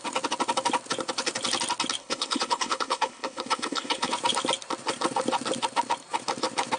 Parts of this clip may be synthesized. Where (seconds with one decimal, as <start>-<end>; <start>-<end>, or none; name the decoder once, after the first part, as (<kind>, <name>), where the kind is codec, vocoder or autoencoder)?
2.0-4.1 (codec, HILCodec)